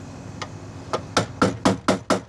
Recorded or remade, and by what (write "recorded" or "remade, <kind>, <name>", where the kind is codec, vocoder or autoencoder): recorded